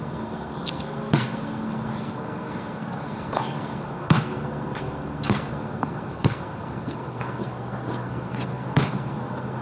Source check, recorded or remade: remade